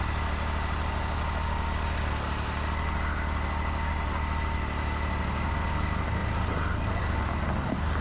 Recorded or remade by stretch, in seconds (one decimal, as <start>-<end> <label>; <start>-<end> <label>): 0.0-6.2 recorded; 6.2-7.0 remade; 7.0-8.0 recorded